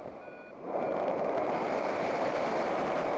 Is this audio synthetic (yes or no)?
yes